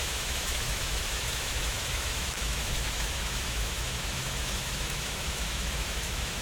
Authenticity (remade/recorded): remade